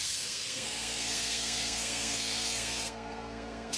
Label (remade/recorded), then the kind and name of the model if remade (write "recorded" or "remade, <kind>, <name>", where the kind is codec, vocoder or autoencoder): remade, codec, SNAC